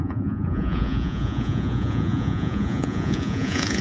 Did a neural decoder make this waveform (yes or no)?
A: yes